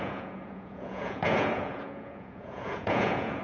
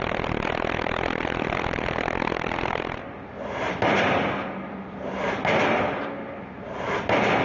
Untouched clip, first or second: second